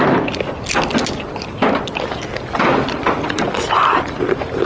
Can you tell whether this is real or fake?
real